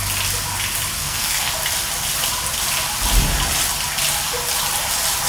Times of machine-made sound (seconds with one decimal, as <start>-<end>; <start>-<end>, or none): 1.0-1.5